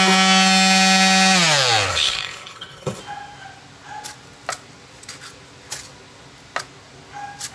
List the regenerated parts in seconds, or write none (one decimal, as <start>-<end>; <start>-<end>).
1.9-3.0